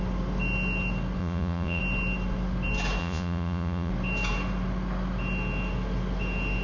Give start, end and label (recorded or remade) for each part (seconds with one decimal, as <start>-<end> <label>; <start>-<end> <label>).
0.0-1.2 recorded; 1.2-1.8 remade; 1.8-3.0 recorded; 3.0-3.9 remade; 3.9-6.6 recorded